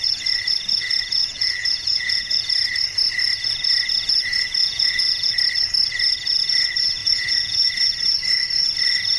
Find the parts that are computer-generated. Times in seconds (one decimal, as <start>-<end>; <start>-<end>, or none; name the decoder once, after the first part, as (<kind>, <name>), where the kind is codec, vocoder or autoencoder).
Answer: 1.2-2.4 (vocoder, Vocos); 4.6-5.3; 7.0-7.7